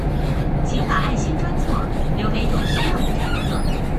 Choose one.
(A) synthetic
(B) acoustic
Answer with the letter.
B